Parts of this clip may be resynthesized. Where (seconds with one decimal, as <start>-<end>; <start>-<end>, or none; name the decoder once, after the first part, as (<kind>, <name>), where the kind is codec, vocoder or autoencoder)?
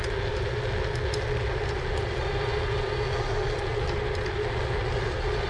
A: none